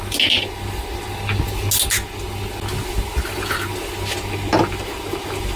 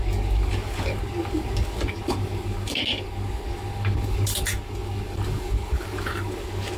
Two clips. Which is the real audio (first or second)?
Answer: first